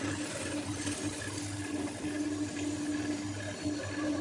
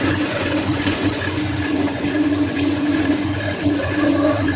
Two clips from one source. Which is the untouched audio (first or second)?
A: first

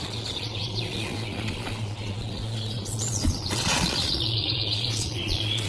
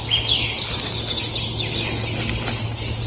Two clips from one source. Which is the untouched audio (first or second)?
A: second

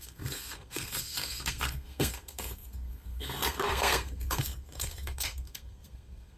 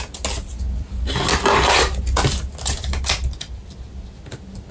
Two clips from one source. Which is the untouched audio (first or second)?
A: second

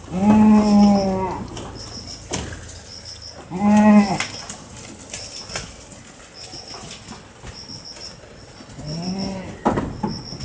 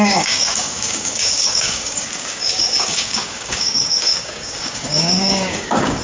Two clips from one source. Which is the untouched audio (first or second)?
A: first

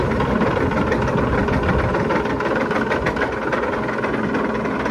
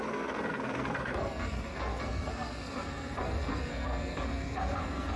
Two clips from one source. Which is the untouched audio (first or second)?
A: first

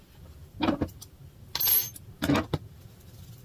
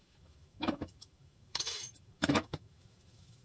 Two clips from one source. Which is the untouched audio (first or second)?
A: first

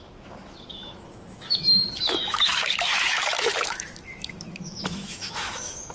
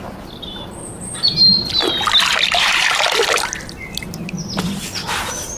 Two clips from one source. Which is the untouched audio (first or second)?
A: second